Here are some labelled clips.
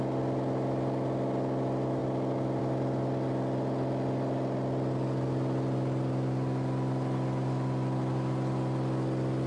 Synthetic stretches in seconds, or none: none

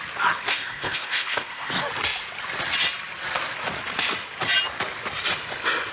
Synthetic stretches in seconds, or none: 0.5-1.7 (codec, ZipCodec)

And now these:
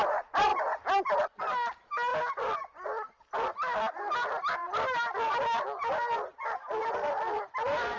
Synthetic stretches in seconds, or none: none

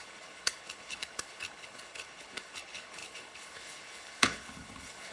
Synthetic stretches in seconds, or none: 0.0-5.1 (codec, HILCodec)

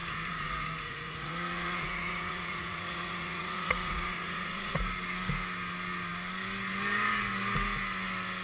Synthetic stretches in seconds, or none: 0.0-4.8 (vocoder, Vocos)

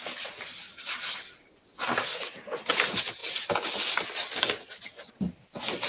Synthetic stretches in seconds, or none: none